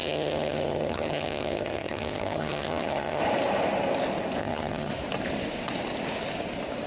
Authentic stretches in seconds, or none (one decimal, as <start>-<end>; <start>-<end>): 3.2-4.4; 4.9-6.9